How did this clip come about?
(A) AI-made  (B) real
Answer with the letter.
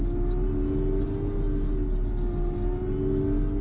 B